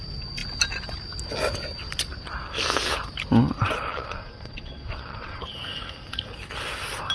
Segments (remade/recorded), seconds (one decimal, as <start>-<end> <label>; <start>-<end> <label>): 0.0-3.9 recorded; 3.9-5.4 remade; 5.4-7.1 recorded